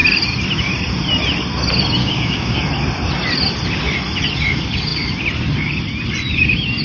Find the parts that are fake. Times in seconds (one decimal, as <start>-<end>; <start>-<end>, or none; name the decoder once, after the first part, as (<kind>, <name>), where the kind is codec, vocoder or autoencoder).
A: 2.0-2.6 (codec, DAC)